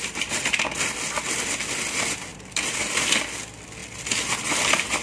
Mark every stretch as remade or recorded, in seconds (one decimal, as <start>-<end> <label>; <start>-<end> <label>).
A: 0.0-5.0 recorded